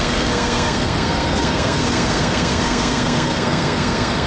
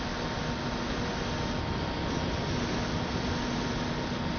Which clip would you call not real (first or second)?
first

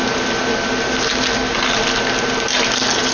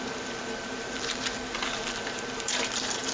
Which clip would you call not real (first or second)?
second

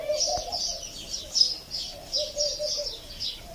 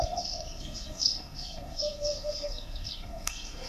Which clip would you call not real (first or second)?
second